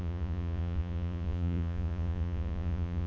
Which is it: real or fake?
fake